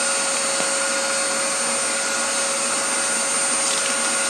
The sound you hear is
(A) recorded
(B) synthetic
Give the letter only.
A